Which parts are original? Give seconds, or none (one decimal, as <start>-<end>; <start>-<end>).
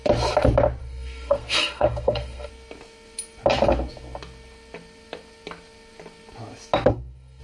0.0-0.8; 2.5-6.9